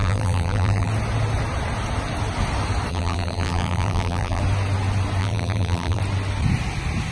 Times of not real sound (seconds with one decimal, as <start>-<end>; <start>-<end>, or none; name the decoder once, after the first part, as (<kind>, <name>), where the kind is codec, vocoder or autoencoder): 0.0-0.9 (vocoder, BigVGAN v2); 2.9-4.4; 5.2-6.0